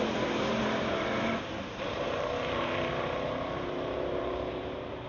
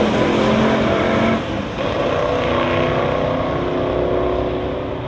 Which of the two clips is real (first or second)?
second